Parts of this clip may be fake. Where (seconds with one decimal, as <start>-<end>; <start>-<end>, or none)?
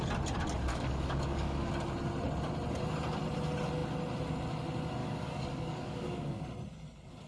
0.7-1.7; 5.0-6.4